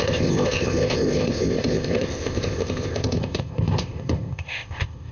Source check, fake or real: fake